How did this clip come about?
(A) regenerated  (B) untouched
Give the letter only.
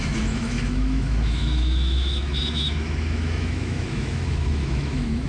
A